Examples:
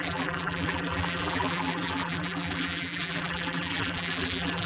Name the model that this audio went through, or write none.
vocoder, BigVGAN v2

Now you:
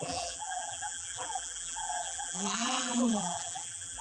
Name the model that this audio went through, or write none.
vocoder, BigVGAN v2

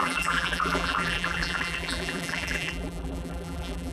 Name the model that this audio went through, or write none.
vocoder, BigVGAN v2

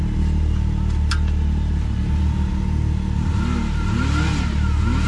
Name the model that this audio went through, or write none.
none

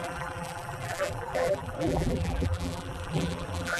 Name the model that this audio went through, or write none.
vocoder, BigVGAN v2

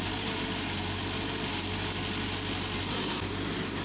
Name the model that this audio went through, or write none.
none